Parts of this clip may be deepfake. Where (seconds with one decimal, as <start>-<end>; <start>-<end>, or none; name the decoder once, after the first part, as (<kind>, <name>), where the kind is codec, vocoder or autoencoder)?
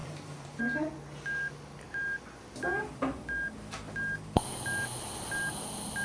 0.0-0.6 (vocoder, BigVGAN v2)